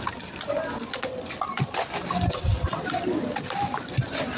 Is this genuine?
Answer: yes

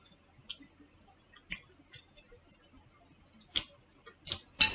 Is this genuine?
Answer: yes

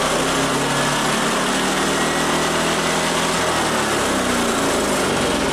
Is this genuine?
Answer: yes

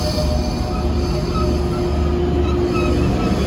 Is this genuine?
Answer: yes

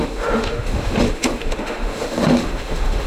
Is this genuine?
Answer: no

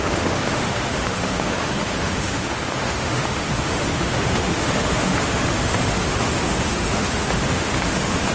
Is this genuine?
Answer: no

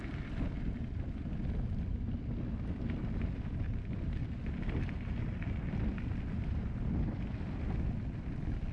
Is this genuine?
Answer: yes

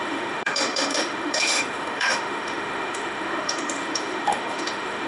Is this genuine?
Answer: no